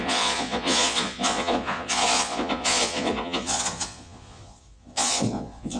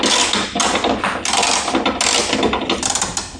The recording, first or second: second